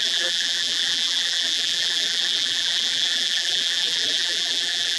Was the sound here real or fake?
fake